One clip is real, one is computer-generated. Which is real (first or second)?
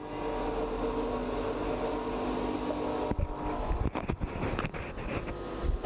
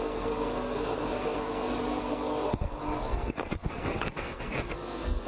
first